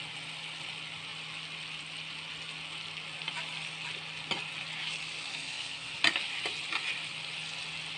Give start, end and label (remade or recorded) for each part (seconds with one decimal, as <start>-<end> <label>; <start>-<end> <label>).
0.0-5.3 recorded; 5.3-6.0 remade; 6.0-8.0 recorded